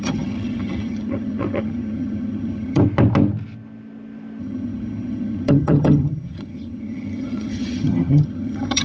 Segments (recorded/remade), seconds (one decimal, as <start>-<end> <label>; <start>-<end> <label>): 0.0-2.8 remade; 2.8-4.4 recorded; 4.4-8.8 remade